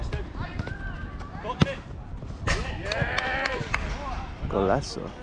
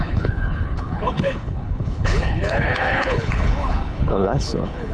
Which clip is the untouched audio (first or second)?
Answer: first